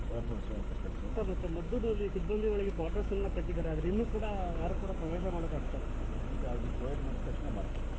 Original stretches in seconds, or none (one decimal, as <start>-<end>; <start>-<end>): 0.0-1.0; 5.8-8.0